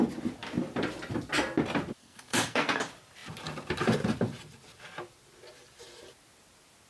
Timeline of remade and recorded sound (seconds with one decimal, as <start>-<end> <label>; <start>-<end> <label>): 0.0-2.0 recorded; 2.0-2.8 remade; 2.8-6.9 recorded